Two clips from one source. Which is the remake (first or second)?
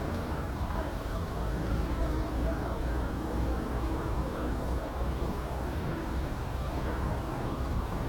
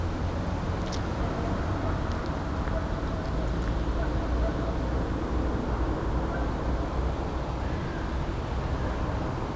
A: first